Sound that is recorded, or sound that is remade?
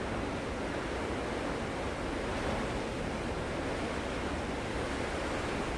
recorded